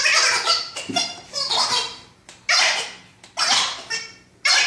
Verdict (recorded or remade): recorded